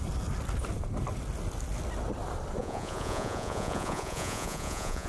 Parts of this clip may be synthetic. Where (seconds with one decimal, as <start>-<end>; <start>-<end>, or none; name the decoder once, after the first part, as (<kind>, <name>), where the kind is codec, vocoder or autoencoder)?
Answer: 2.6-5.1 (vocoder, Vocos)

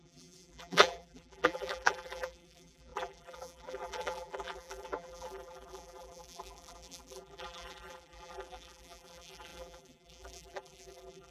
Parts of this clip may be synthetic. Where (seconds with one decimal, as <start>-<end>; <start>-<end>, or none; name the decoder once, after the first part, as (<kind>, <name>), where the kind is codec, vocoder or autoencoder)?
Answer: 0.0-11.3 (vocoder, BigVGAN v2)

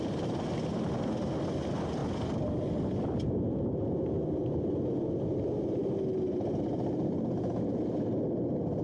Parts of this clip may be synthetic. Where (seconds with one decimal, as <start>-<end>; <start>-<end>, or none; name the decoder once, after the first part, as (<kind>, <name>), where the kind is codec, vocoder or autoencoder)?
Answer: none

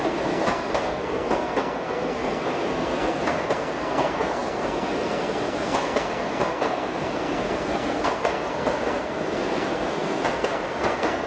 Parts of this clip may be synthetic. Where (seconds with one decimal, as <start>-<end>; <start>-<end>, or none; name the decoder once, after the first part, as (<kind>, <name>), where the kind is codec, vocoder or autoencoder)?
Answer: 0.0-11.3 (codec, SNAC)

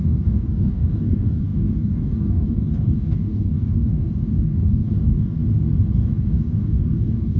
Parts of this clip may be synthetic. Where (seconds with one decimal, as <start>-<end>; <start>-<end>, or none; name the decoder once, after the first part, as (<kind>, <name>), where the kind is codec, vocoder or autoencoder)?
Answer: 0.0-5.4 (codec, DAC); 5.9-7.4

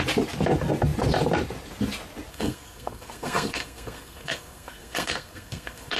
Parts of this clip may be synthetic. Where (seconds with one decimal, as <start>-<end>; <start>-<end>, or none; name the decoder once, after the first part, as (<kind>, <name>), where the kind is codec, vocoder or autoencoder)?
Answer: 2.3-6.0 (codec, SNAC)